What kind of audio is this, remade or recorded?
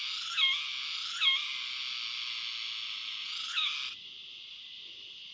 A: recorded